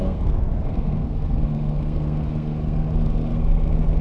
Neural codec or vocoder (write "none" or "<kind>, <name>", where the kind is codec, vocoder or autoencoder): codec, SNAC